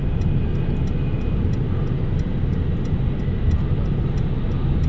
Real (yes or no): yes